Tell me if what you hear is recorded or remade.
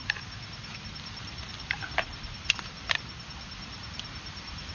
remade